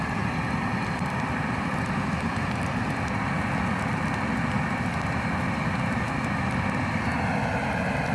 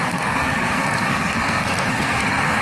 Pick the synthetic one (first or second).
second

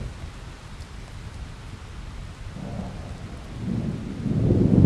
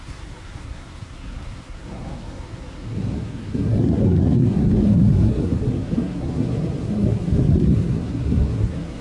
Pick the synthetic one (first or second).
second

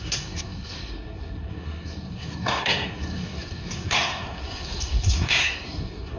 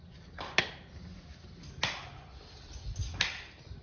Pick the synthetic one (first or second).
first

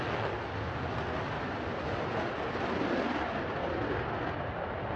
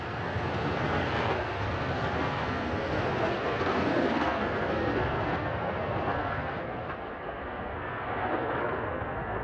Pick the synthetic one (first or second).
second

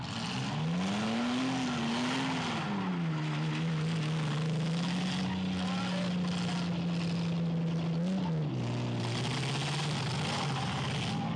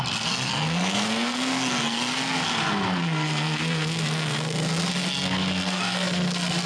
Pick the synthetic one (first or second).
second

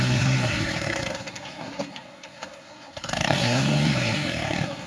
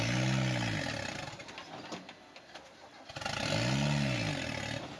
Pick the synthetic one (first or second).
first